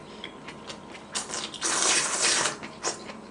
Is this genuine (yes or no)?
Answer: yes